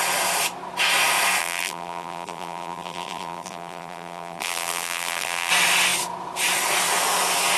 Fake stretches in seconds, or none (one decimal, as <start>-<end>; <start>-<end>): 1.4-5.5